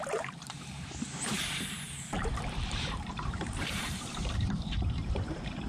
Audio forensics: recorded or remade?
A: remade